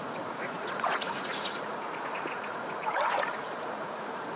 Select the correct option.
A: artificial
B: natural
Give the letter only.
A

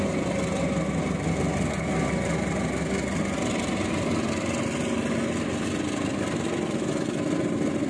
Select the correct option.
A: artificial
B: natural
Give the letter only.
B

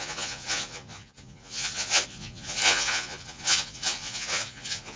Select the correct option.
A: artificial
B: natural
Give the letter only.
A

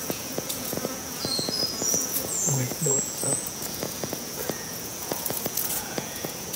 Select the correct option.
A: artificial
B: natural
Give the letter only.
A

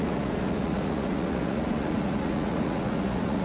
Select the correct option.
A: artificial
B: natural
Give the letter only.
A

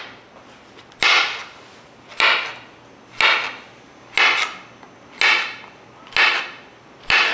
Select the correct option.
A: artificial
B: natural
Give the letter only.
B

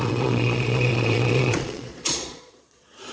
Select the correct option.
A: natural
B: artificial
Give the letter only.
B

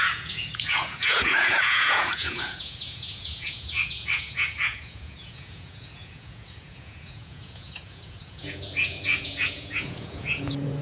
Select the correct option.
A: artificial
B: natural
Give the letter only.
A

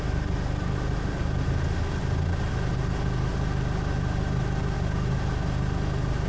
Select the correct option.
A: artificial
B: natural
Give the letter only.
B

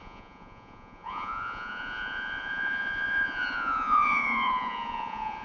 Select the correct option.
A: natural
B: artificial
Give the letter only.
B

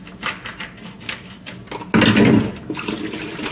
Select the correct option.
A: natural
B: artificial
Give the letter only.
A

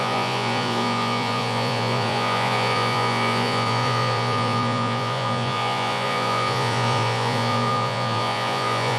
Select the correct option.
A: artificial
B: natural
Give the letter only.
A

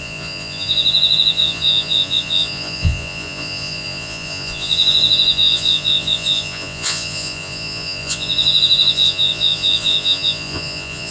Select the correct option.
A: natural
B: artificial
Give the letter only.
B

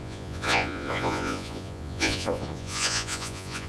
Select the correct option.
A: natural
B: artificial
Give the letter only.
B